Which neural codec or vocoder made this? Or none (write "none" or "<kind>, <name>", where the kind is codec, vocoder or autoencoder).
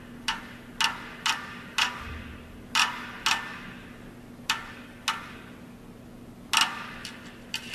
none